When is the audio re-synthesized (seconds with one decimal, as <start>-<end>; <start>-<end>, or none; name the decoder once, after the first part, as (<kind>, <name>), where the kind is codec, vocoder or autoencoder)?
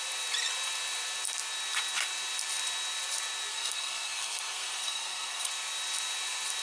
3.5-5.5 (codec, SNAC)